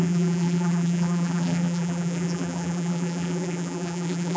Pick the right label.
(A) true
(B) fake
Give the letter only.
B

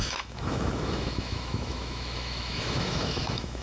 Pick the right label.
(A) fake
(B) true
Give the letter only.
A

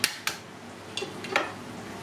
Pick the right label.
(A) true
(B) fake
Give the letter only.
A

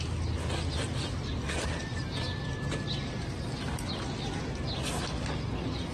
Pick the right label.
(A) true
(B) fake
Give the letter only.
A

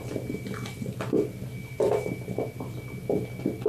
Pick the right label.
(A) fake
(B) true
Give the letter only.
B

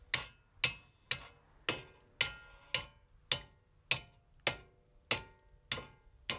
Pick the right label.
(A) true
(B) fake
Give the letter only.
A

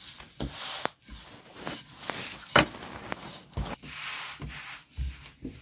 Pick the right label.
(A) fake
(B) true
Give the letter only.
B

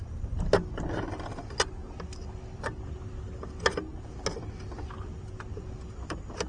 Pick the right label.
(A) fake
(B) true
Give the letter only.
B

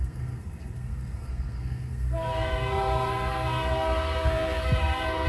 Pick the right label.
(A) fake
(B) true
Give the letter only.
A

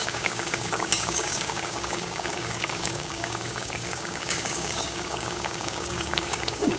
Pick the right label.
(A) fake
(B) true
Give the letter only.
A